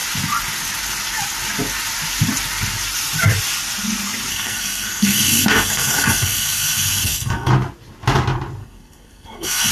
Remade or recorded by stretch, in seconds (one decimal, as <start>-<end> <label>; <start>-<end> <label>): 0.0-4.3 recorded; 4.3-7.5 remade; 7.5-8.6 recorded; 8.6-9.7 remade

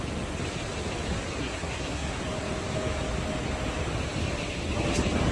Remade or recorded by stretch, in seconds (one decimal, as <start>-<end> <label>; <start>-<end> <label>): 0.0-1.4 recorded; 1.4-2.2 remade; 2.2-5.3 recorded

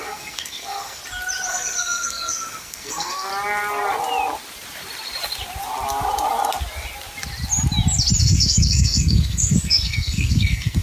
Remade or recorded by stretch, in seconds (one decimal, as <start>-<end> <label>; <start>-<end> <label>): 0.0-1.0 remade; 1.0-1.5 recorded; 1.5-3.3 remade; 3.3-8.2 recorded; 8.2-10.8 remade

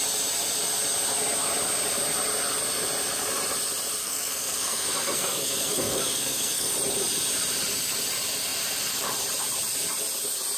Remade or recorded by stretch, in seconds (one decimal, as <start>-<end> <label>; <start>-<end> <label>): 0.0-4.0 recorded; 4.0-6.7 remade; 6.7-10.6 recorded

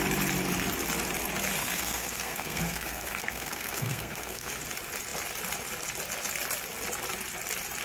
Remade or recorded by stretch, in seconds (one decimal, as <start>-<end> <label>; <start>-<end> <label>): 0.0-1.6 recorded; 1.6-4.5 remade; 4.5-7.8 recorded

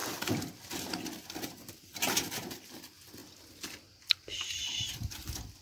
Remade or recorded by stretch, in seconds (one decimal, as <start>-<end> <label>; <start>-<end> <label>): 0.0-5.6 recorded

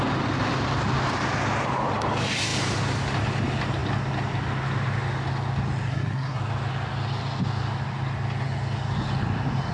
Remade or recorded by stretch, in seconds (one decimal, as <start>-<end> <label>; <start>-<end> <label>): 0.0-5.9 recorded; 5.9-6.4 remade; 6.4-9.7 recorded

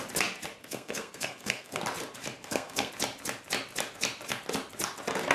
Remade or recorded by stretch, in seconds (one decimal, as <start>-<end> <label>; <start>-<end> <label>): 0.0-0.6 recorded; 0.6-1.8 remade; 1.8-2.4 recorded; 2.4-2.9 remade; 2.9-5.3 recorded